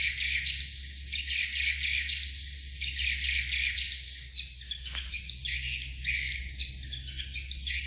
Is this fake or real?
real